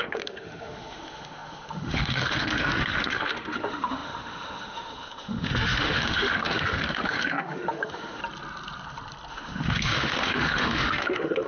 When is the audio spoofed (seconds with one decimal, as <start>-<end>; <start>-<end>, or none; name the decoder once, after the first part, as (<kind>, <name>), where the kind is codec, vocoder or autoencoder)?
0.0-8.2 (autoencoder, DAC-VAE); 9.3-11.5